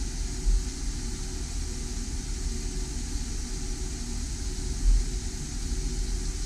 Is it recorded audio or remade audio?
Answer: recorded